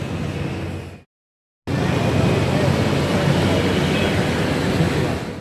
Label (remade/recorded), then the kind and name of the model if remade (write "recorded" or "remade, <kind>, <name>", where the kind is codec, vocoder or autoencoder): recorded